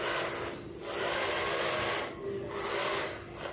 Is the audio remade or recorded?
recorded